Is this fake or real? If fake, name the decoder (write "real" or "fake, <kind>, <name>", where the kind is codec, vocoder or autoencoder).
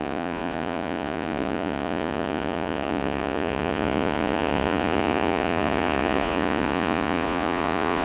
fake, vocoder, Vocos